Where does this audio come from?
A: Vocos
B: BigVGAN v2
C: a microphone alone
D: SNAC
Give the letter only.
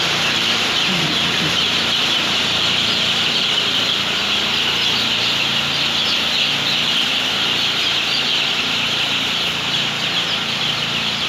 B